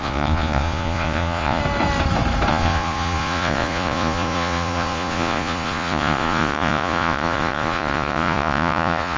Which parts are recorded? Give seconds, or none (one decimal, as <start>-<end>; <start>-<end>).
1.6-2.5